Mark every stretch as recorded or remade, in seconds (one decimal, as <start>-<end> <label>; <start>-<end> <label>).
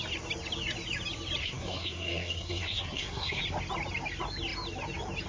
0.0-1.4 recorded; 1.4-3.4 remade; 3.4-5.3 recorded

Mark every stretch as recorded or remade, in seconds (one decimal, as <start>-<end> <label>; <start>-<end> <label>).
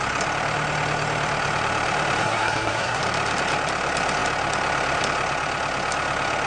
0.0-2.2 recorded; 2.2-3.0 remade; 3.0-6.5 recorded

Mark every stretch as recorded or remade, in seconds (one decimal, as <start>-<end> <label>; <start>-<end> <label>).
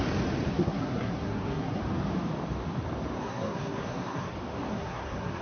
0.0-0.5 recorded; 0.5-1.8 remade; 1.8-3.2 recorded; 3.2-4.3 remade; 4.3-4.7 recorded; 4.7-5.4 remade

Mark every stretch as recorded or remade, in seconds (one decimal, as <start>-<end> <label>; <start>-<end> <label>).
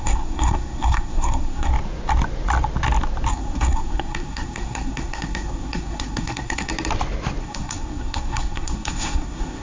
0.0-1.7 remade; 1.7-3.3 recorded; 3.3-6.7 remade; 6.7-7.4 recorded; 7.4-9.6 remade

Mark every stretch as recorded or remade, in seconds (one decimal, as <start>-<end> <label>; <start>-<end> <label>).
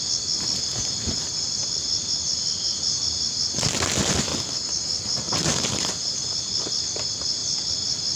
0.0-8.2 recorded